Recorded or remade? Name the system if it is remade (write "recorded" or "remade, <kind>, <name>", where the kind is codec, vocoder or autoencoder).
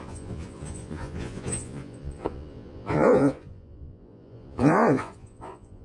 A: remade, vocoder, Vocos